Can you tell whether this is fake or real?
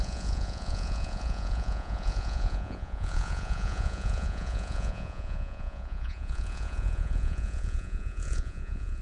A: fake